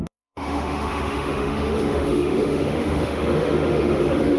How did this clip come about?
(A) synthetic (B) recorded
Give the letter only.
A